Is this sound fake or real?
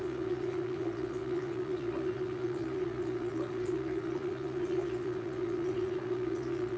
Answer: fake